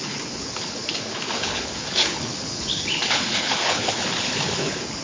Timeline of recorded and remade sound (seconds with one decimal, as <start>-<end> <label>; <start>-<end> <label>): 0.0-5.0 remade